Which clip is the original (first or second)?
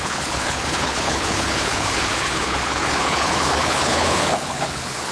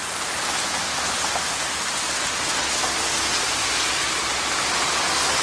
second